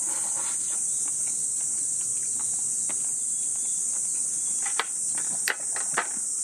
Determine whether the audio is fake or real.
real